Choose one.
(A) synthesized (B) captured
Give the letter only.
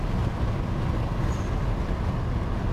B